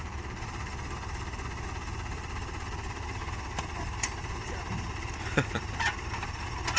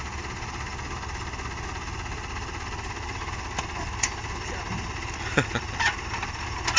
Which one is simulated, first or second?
first